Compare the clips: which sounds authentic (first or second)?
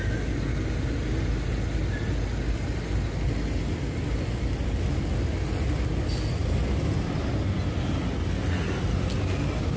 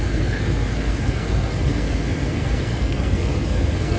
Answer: first